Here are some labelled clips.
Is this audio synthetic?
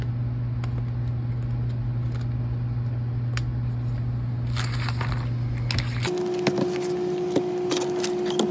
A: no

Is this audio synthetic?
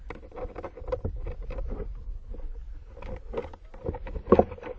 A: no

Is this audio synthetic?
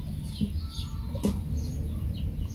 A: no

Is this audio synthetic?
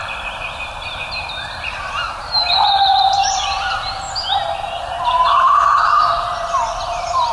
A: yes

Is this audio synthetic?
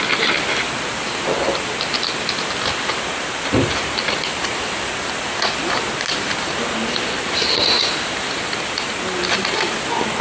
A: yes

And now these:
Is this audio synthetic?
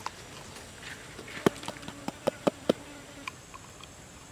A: yes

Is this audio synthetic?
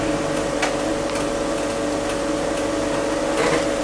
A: no